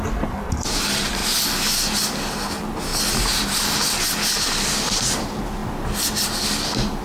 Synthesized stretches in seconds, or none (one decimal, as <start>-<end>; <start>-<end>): 0.0-1.2; 2.3-2.9; 4.9-5.6